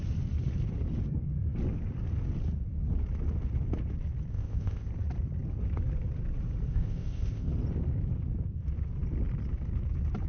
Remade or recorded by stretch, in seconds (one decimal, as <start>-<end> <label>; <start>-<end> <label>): 0.0-4.3 recorded; 4.3-4.9 remade; 4.9-6.7 recorded; 6.7-7.5 remade; 7.5-10.3 recorded